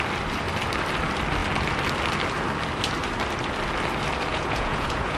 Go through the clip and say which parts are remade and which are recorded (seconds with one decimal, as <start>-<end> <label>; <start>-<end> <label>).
0.0-4.3 recorded; 4.3-5.2 remade